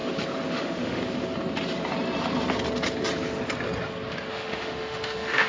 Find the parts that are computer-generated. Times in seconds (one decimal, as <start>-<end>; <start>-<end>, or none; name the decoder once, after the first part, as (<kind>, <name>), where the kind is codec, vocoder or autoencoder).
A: 0.5-1.0 (autoencoder, DAC-VAE); 4.3-5.5